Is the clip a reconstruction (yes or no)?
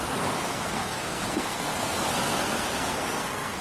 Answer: yes